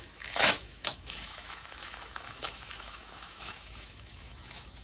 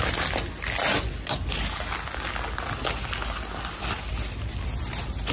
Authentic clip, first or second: second